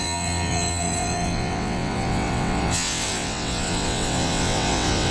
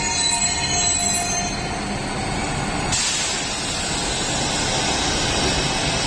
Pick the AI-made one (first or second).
first